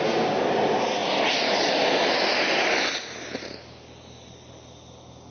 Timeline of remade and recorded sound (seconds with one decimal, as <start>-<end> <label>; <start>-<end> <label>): 0.0-5.3 recorded